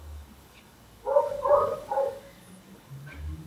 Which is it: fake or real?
fake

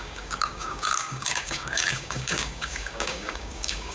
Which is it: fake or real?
fake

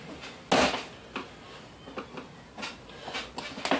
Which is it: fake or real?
real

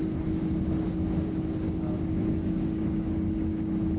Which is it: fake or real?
fake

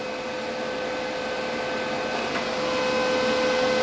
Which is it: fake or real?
real